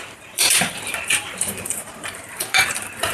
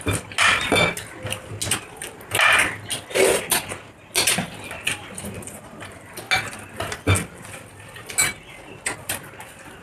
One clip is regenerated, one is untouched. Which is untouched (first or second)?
second